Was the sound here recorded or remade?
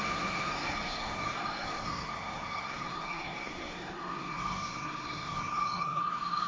remade